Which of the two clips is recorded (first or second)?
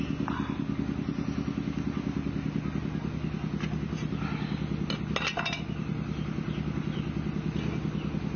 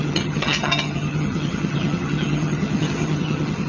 first